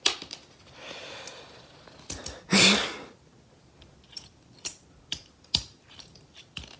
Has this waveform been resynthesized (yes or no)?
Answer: no